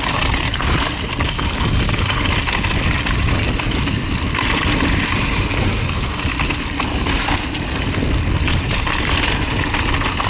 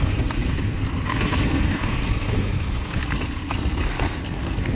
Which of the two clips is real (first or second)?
first